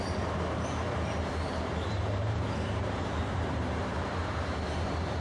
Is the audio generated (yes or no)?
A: yes